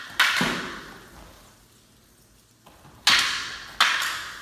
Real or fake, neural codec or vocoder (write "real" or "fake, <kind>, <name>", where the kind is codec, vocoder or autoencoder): real